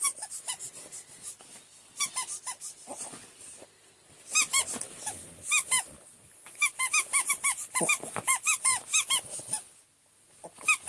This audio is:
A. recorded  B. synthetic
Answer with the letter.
A